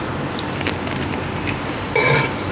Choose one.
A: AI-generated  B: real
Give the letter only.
B